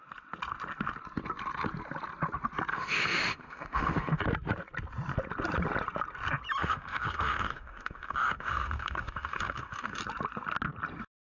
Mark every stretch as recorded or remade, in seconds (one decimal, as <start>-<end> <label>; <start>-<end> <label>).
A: 0.0-2.7 recorded; 2.7-4.2 remade; 4.2-6.6 recorded; 6.6-10.0 remade; 10.0-11.3 recorded